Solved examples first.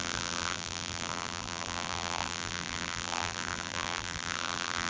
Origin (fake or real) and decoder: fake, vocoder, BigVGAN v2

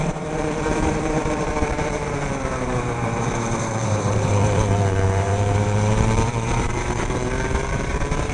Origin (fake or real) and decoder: fake, vocoder, BigVGAN v2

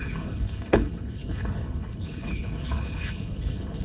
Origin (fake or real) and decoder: fake, codec, HILCodec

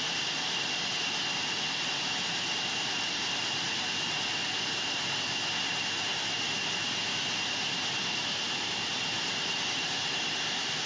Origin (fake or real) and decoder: real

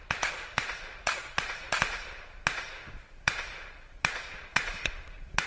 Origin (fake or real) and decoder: fake, vocoder, Vocos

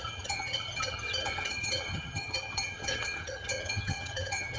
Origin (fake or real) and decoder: fake, vocoder, HiFi-GAN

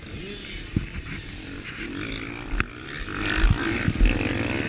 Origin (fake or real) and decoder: real